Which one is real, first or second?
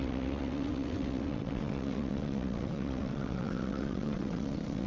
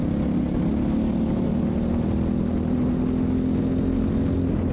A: second